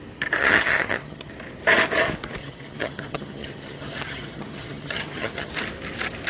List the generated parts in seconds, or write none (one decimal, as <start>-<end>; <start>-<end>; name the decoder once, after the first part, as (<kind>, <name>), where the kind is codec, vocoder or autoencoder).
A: 0.4-1.3 (vocoder, HiFi-GAN); 2.4-5.5

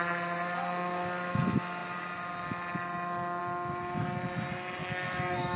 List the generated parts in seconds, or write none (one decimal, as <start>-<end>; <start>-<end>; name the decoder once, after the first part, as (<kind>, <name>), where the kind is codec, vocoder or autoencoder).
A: 4.8-5.6 (autoencoder, DAC-VAE)

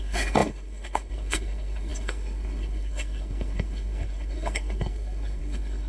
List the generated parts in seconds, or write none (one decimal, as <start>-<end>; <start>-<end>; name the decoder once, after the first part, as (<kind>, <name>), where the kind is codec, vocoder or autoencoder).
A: 0.0-5.9 (codec, SNAC)

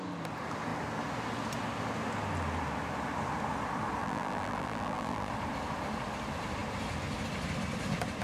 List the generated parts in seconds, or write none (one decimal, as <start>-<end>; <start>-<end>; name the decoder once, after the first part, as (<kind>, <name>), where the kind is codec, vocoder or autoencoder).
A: 4.0-5.3 (vocoder, BigVGAN v2)

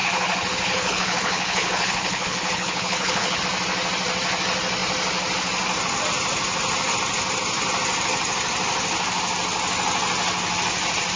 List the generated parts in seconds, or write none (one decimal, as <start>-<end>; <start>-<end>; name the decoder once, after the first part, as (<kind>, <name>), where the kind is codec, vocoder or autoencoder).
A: 0.0-3.4 (codec, HILCodec)

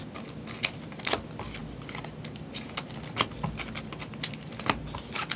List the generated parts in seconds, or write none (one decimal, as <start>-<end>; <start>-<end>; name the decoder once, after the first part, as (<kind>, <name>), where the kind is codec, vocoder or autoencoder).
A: none

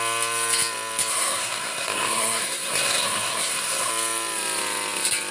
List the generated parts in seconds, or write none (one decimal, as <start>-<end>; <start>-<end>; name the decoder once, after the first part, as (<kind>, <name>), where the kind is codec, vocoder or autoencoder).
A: 1.1-3.9 (codec, SNAC)